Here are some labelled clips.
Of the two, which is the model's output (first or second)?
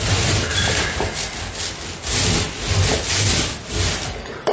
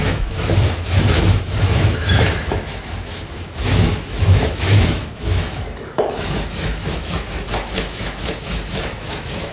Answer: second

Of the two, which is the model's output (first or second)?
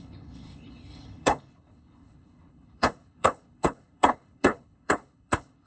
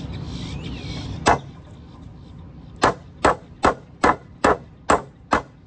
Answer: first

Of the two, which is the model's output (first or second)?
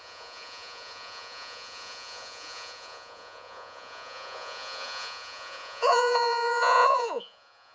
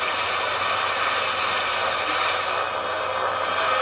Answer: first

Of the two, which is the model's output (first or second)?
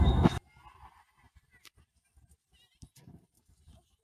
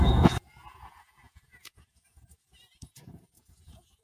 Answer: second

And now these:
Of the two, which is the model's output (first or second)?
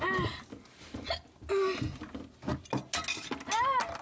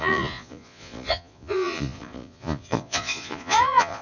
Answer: second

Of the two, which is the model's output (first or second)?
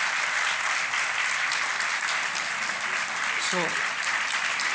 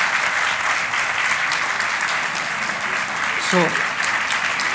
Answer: first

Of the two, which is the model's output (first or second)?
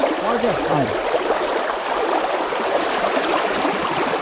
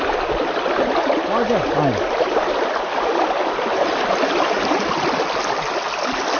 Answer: first